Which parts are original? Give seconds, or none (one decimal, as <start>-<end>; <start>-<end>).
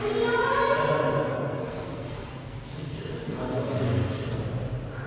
0.0-1.3; 4.4-5.1